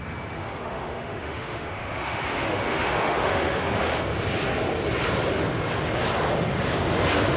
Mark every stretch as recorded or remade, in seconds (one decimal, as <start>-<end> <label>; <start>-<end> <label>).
0.0-0.4 recorded; 0.4-4.0 remade; 4.0-7.4 recorded